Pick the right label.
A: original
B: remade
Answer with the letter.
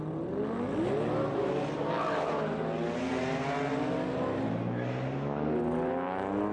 A